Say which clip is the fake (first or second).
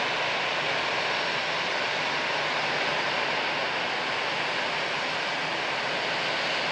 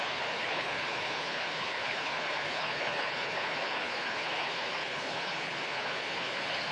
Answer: second